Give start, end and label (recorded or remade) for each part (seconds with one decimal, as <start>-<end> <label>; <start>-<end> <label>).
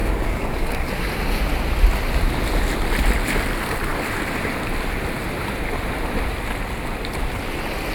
0.0-0.9 remade; 0.9-7.9 recorded